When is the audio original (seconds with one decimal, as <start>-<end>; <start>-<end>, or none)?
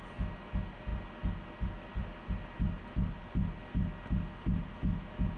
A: 0.0-5.4